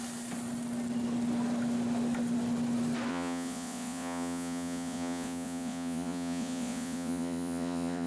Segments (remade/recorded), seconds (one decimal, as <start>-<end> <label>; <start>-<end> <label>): 0.0-3.1 recorded; 3.1-8.1 remade